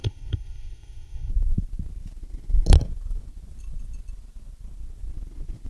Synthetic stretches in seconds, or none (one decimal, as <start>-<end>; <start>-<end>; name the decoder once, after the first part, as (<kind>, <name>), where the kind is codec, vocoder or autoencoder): 0.0-1.3 (codec, SNAC)